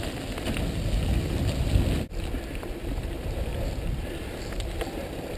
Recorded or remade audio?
recorded